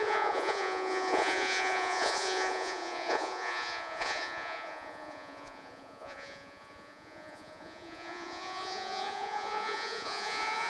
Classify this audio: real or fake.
fake